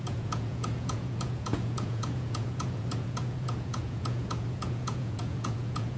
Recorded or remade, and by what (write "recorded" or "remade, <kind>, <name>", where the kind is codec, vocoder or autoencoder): remade, vocoder, Vocos